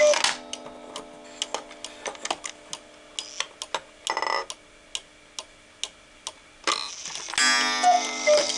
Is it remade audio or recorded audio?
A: recorded